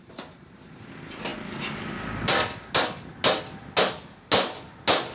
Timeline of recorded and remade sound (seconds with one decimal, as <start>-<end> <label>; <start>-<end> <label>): 0.0-5.1 recorded